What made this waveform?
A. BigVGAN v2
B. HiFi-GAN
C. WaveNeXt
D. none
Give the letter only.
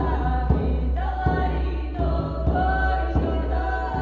D